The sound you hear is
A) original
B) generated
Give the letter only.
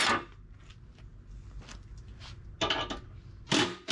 A